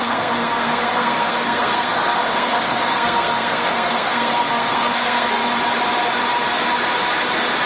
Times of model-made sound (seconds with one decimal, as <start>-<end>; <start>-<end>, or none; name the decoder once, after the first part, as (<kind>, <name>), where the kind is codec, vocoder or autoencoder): 0.0-5.4 (codec, SNAC)